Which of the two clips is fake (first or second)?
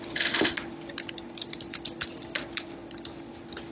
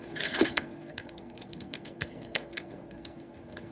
second